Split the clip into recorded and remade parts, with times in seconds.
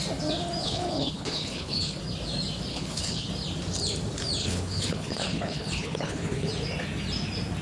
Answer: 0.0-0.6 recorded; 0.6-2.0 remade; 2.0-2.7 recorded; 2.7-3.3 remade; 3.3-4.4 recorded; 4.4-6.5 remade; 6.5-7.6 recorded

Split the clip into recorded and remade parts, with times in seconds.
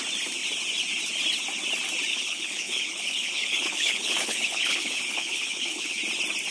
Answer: 0.0-2.1 recorded; 2.1-6.0 remade; 6.0-6.5 recorded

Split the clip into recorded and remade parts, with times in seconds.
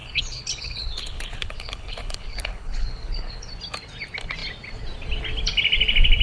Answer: 0.0-3.5 remade; 3.5-6.2 recorded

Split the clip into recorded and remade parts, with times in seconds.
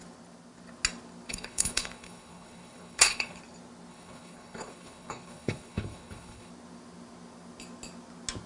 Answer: 0.0-1.3 recorded; 1.3-3.4 remade; 3.4-3.9 recorded; 3.9-6.5 remade; 6.5-8.5 recorded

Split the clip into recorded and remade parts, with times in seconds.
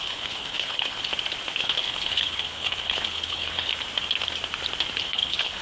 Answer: 0.0-1.1 remade; 1.1-1.6 recorded; 1.6-3.7 remade; 3.7-5.0 recorded; 5.0-5.6 remade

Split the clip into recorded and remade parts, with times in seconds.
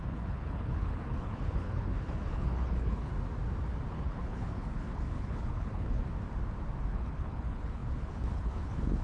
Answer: 0.0-3.1 remade; 3.1-3.9 recorded; 3.9-6.0 remade; 6.0-6.9 recorded; 6.9-9.0 remade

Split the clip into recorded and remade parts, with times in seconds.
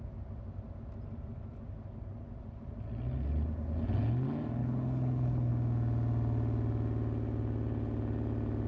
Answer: 0.0-4.6 recorded; 4.6-5.5 remade; 5.5-8.7 recorded